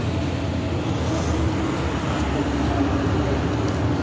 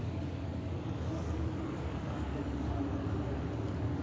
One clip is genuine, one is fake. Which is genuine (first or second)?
first